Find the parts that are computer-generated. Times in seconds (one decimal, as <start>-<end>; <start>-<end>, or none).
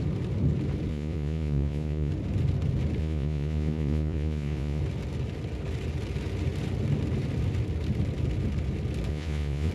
0.9-2.1; 3.0-4.8; 9.1-9.7